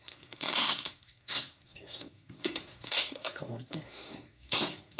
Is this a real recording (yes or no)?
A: no